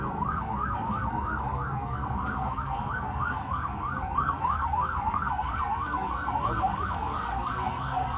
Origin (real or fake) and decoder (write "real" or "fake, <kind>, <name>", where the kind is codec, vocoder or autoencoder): fake, codec, SNAC